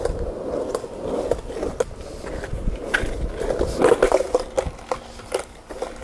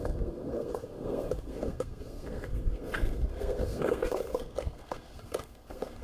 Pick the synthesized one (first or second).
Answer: second